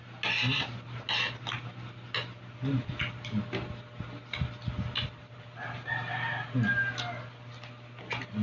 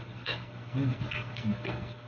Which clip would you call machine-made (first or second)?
second